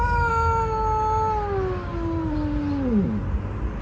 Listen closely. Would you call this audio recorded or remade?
recorded